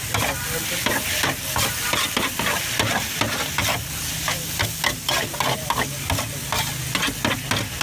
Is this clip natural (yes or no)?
yes